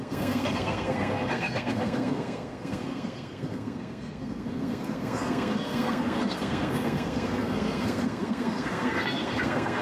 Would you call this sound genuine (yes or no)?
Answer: no